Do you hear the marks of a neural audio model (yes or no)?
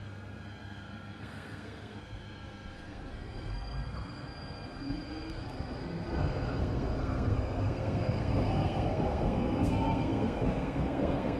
yes